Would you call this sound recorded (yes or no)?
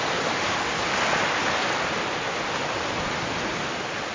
yes